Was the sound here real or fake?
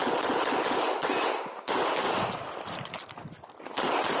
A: real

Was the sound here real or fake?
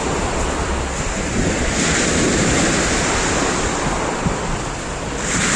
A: real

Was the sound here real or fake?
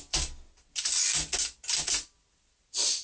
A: real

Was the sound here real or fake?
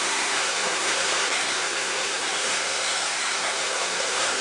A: fake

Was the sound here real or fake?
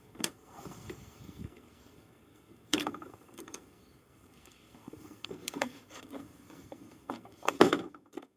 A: fake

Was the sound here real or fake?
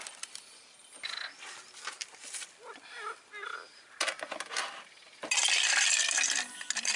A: real